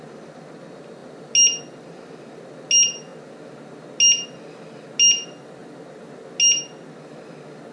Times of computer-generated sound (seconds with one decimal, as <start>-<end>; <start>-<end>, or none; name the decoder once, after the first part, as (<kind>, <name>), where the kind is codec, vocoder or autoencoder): none